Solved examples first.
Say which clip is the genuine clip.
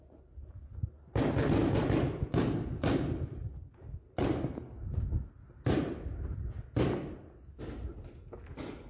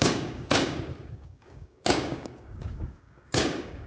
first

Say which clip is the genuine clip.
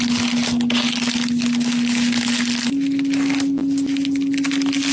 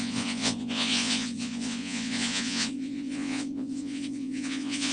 first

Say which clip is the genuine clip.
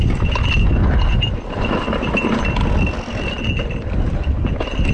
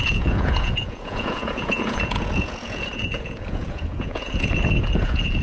first